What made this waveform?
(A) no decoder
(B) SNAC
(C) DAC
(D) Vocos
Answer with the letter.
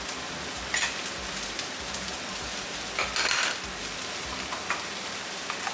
A